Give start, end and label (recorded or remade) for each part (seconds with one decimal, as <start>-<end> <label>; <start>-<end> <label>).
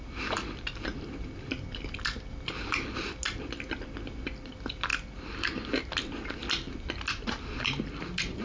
0.0-0.9 remade; 0.9-4.5 recorded; 4.5-4.9 remade; 4.9-8.4 recorded